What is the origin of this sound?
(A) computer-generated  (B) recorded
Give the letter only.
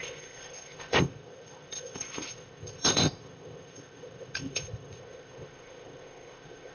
A